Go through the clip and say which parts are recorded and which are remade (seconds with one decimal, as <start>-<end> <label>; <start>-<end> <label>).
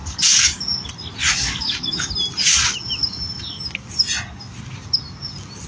0.0-0.6 remade; 0.6-1.2 recorded; 1.2-2.1 remade; 2.1-5.7 recorded